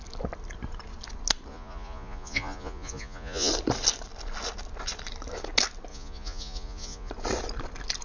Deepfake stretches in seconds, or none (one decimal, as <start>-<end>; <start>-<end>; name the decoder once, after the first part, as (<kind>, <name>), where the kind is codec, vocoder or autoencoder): 1.5-3.5 (vocoder, Vocos); 5.9-7.1